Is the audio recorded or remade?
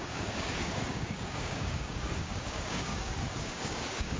remade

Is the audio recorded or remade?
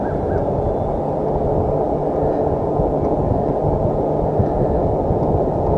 recorded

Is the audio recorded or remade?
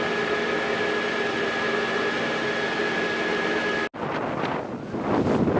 recorded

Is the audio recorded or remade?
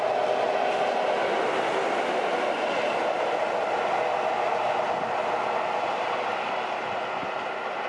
recorded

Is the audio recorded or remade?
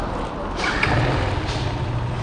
recorded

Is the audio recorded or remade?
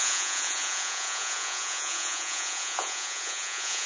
remade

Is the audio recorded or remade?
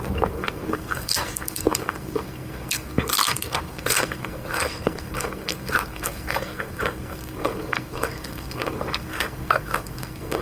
remade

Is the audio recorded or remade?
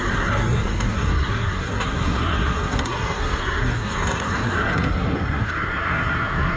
remade